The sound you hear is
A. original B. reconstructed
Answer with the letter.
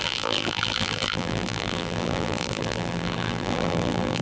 B